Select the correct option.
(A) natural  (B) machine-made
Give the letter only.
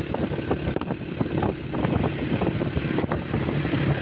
B